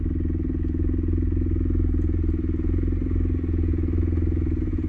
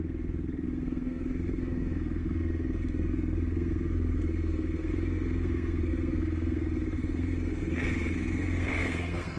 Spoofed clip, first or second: second